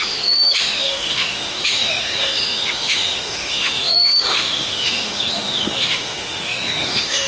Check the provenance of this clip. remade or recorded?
remade